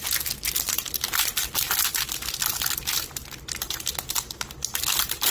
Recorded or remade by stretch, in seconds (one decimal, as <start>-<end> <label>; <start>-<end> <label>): 0.0-5.3 recorded